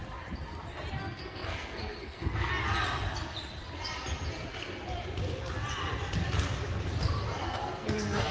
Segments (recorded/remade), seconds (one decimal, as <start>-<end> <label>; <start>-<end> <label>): 0.0-1.0 recorded; 1.0-2.5 remade; 2.5-7.4 recorded; 7.4-8.3 remade